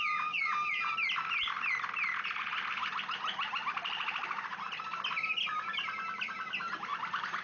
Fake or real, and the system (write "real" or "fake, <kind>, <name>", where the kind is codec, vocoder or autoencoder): real